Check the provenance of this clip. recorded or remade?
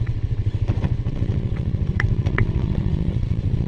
remade